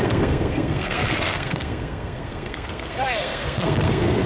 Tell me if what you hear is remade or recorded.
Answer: remade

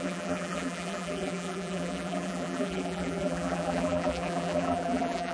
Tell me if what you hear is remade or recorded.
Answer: remade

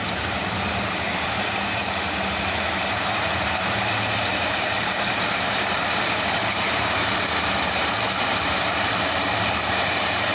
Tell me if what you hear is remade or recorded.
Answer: remade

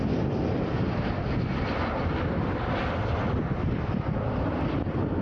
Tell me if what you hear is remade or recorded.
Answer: recorded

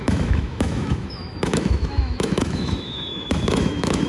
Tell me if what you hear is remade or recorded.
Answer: remade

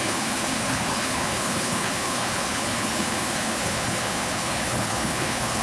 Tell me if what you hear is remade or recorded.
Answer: remade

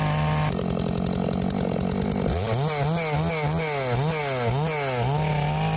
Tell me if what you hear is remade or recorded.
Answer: recorded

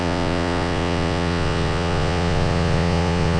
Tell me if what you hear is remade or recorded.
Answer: remade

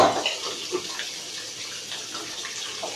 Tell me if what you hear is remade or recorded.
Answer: recorded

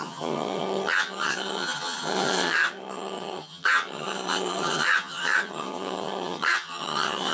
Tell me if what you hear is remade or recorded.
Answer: remade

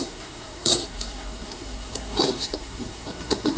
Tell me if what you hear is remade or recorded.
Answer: remade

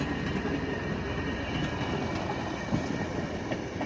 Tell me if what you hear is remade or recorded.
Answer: recorded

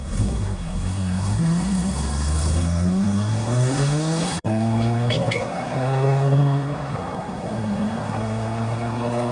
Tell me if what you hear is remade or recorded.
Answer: remade